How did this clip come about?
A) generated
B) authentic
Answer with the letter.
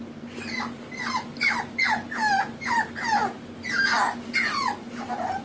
B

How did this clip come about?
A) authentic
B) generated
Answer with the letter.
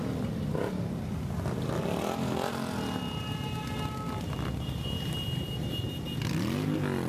A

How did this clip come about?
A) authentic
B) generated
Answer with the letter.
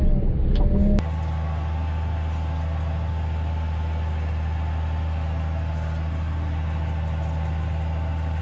A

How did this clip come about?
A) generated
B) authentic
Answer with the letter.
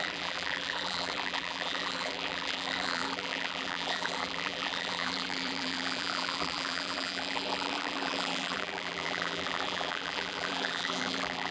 A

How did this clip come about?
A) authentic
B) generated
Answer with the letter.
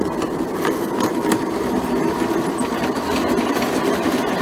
A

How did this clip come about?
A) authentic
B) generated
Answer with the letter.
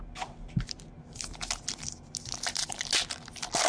A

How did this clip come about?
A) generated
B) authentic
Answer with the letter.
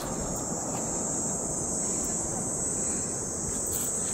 B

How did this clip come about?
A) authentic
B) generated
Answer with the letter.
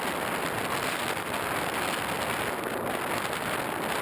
A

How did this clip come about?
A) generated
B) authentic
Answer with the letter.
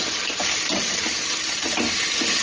B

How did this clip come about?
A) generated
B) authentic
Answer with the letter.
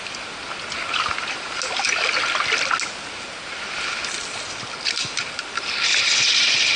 B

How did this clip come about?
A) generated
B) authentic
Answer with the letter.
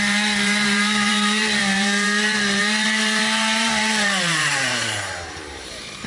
A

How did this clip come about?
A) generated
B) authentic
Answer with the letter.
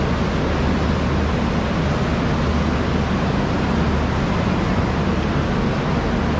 B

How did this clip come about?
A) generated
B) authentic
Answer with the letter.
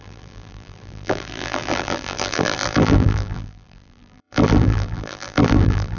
A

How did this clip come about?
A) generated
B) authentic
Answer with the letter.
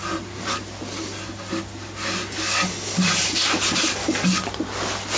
B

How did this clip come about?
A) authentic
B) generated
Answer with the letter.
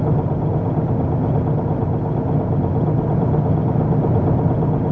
A